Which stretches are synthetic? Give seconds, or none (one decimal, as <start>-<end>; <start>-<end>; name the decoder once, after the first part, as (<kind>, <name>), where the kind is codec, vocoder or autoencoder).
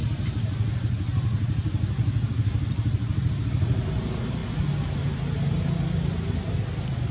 none